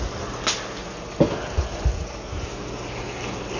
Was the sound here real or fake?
real